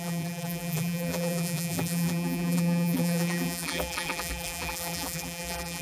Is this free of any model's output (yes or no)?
no